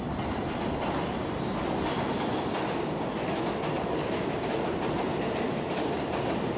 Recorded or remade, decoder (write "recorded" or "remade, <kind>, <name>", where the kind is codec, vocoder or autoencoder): recorded